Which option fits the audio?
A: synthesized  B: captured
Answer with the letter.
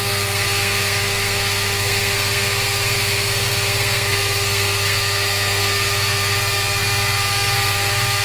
A